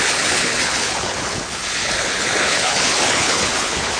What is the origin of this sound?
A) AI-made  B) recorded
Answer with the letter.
A